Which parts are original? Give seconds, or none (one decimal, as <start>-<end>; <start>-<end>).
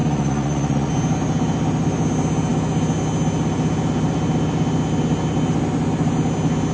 0.9-6.7